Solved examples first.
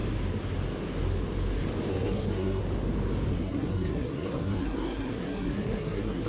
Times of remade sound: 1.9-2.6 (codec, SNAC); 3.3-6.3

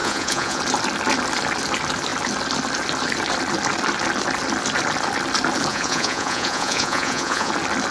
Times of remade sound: 0.0-0.6 (vocoder, Vocos); 5.7-7.5

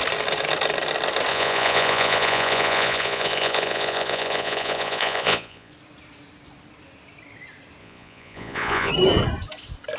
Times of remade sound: 1.3-5.7 (vocoder, Vocos); 7.8-8.9

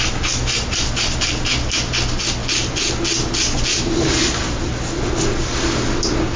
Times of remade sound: 3.7-4.7 (vocoder, BigVGAN v2)

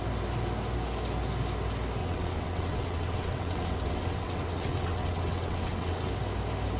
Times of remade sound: 2.0-6.1 (vocoder, WaveNeXt)

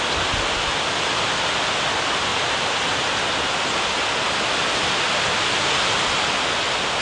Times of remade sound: none